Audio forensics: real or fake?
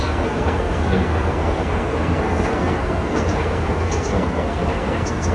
fake